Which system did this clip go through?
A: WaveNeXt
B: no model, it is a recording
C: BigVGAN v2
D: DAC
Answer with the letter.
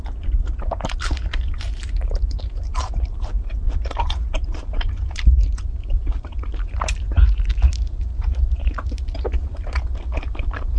C